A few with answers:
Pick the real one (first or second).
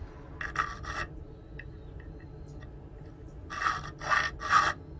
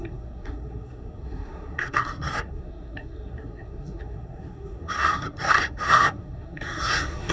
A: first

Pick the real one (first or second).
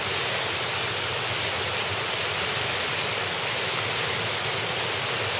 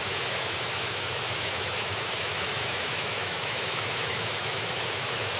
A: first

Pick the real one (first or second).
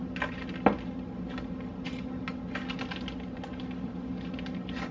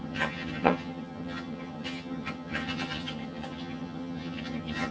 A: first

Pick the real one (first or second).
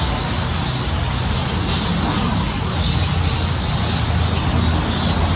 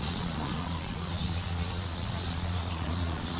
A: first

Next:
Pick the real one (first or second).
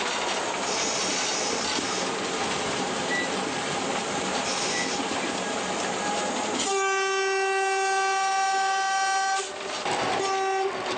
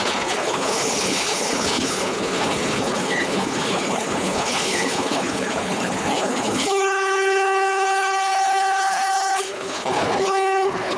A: first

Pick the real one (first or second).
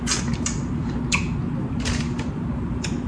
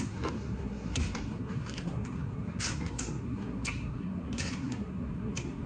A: first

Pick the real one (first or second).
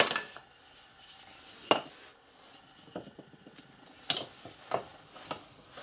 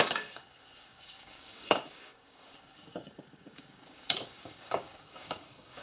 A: first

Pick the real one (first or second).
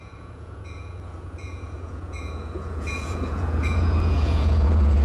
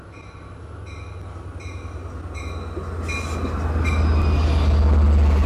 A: second